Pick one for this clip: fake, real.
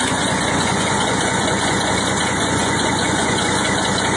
fake